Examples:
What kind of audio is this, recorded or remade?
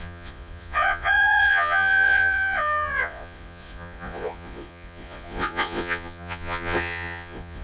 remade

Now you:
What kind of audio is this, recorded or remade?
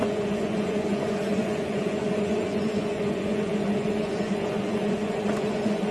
remade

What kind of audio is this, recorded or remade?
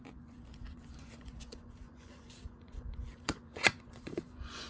remade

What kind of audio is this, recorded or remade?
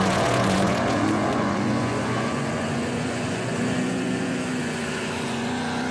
remade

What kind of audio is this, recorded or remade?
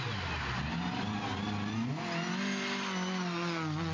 recorded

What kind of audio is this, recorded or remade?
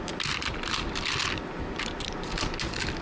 recorded